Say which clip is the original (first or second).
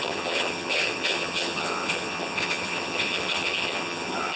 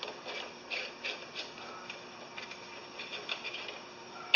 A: second